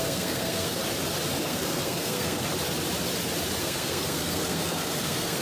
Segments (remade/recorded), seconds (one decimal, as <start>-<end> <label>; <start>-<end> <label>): 0.0-0.8 remade; 0.8-1.4 recorded; 1.4-2.5 remade; 2.5-3.6 recorded; 3.6-5.4 remade